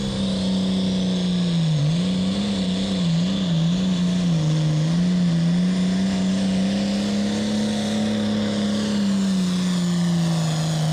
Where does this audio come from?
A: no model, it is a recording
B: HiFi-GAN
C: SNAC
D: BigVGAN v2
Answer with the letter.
A